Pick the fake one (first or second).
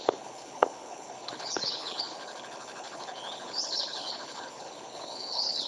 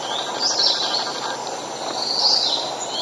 first